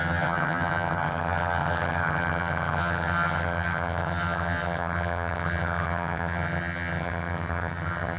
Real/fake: fake